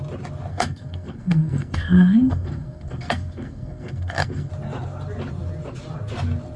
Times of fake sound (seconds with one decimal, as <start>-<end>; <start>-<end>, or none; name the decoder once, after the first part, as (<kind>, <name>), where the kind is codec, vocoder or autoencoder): 0.5-4.5 (codec, SNAC)